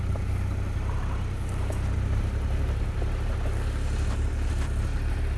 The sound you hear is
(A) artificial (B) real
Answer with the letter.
B